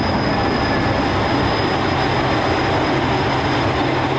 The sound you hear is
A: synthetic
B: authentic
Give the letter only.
B